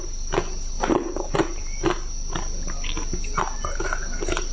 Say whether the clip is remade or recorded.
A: recorded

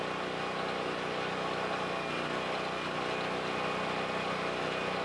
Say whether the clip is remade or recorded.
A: recorded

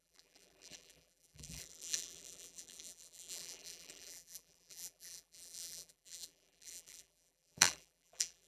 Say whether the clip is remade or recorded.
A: remade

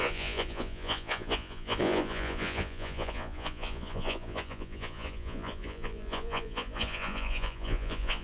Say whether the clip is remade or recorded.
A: remade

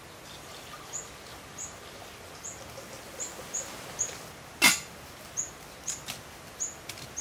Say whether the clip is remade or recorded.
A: recorded